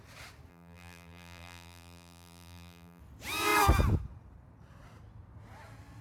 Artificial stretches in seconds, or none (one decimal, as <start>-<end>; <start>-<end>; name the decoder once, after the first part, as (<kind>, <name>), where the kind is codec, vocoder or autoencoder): 0.5-3.0 (vocoder, BigVGAN v2)